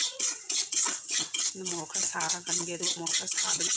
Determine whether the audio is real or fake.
fake